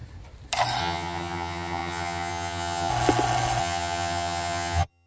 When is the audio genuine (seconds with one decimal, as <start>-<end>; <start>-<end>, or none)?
0.0-0.8; 2.9-3.6